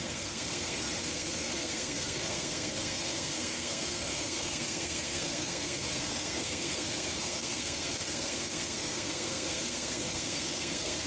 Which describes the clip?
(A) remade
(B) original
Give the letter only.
A